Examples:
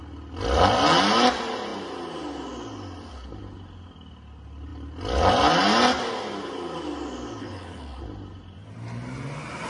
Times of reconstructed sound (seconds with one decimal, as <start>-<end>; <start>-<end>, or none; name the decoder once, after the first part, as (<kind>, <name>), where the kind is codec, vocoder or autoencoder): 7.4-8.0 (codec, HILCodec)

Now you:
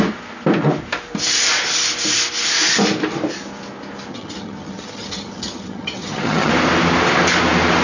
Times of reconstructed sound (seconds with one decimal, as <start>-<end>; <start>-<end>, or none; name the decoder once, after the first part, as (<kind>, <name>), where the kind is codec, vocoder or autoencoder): 4.1-6.5 (vocoder, HiFi-GAN)

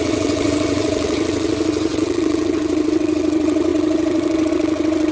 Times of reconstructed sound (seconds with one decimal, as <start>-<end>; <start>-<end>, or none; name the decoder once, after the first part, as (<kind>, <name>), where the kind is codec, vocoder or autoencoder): 0.0-5.1 (vocoder, WaveNeXt)